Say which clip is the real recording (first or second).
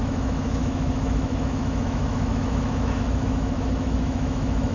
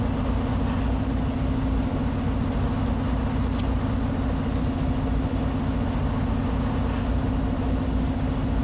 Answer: second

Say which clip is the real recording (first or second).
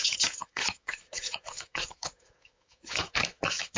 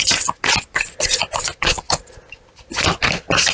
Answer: second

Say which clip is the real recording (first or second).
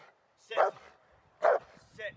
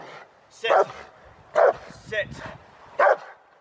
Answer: second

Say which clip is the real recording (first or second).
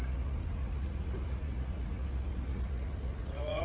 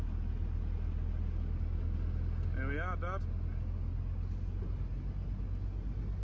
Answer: second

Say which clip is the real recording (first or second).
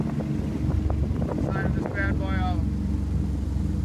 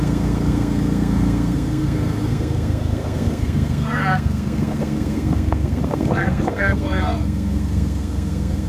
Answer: first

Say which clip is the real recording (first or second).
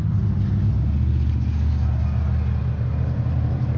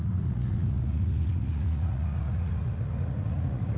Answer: first